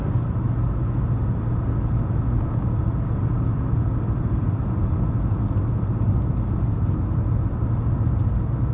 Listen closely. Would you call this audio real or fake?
real